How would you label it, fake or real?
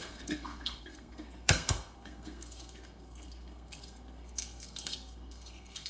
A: fake